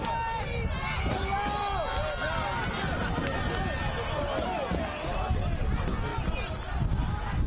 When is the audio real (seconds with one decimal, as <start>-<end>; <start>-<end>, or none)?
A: 0.0-7.5